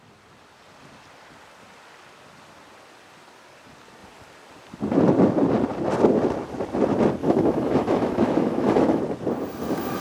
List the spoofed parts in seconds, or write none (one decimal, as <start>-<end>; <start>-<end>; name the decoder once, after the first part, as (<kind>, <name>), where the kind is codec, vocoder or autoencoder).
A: 7.2-9.0 (autoencoder, DAC-VAE)